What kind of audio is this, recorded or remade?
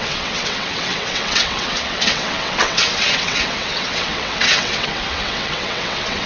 remade